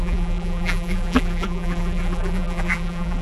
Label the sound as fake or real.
fake